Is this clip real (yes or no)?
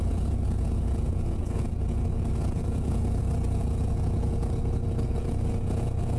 no